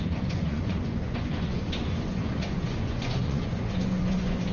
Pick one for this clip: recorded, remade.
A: remade